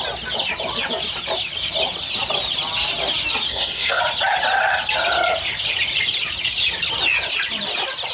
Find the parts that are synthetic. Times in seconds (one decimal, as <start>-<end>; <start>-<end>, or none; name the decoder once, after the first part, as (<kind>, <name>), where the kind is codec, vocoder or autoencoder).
3.5-4.0 (codec, SNAC)

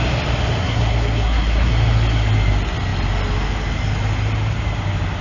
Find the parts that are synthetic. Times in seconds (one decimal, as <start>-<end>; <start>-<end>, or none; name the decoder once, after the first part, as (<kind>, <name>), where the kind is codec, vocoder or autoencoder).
0.6-1.7 (codec, SNAC)

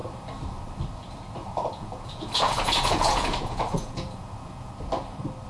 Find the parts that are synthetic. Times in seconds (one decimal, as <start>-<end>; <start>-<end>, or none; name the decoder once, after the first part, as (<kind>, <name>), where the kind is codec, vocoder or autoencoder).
1.4-4.7 (vocoder, Vocos)